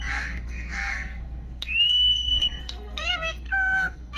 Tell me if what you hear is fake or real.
fake